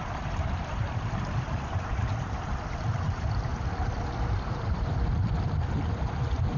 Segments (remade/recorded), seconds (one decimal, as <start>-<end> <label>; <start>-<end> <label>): 0.0-6.6 remade